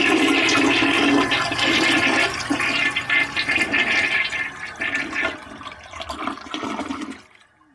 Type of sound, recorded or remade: recorded